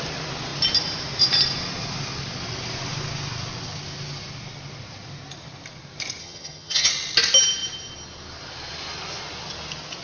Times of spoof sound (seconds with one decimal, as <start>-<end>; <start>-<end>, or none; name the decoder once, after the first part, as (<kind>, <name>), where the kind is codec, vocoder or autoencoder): 6.2-6.9 (vocoder, HiFi-GAN)